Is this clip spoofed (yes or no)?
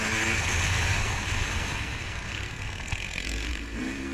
yes